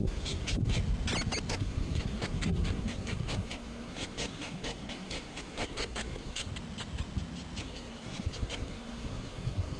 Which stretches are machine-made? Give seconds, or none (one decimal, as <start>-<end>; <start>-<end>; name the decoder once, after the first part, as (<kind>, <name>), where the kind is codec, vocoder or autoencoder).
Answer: 0.0-0.8 (codec, SNAC); 1.5-6.5; 7.6-9.8